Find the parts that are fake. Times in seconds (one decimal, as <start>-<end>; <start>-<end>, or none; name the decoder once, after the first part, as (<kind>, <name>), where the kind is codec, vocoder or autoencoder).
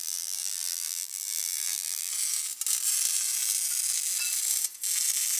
0.0-2.1 (vocoder, BigVGAN v2)